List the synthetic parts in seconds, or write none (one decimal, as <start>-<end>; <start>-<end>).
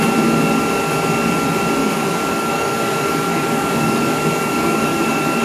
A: 1.8-5.0